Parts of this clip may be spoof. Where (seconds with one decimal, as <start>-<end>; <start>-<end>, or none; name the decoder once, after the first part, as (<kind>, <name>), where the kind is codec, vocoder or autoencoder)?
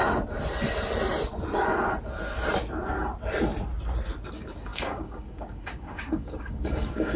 4.3-7.2 (codec, DAC)